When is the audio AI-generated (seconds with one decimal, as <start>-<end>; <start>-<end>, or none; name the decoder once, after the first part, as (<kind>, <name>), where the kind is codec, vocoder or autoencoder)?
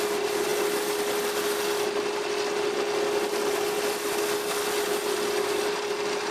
none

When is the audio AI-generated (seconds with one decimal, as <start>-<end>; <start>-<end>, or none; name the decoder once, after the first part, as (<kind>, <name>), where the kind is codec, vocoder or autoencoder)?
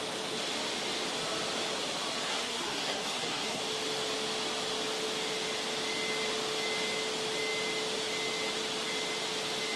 2.3-3.6 (codec, SNAC)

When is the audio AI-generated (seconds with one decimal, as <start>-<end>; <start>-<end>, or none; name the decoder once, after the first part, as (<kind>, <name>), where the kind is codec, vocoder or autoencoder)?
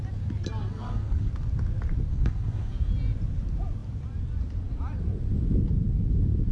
0.6-1.3 (codec, SNAC); 2.1-2.9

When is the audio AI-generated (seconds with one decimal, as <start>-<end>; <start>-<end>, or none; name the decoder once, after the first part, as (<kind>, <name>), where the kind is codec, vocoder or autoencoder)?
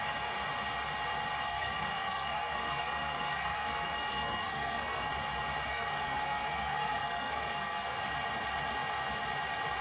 1.5-5.1 (codec, SNAC); 5.7-8.0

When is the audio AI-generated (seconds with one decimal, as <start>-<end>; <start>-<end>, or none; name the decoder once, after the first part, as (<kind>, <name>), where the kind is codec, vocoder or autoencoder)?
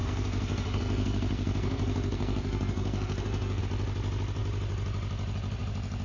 0.0-3.6 (codec, SNAC)